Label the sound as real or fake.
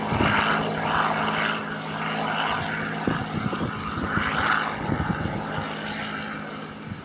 real